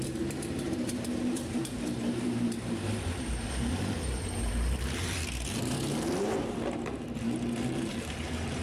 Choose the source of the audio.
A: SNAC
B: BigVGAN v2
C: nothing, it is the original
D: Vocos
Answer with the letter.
B